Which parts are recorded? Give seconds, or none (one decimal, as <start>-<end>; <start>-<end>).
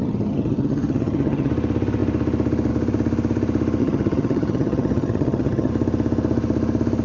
1.5-3.8; 5.7-7.0